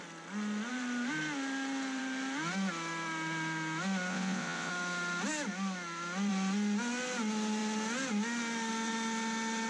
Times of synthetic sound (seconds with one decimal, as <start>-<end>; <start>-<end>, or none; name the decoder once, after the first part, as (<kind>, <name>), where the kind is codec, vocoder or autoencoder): 4.1-4.7 (vocoder, WaveNeXt)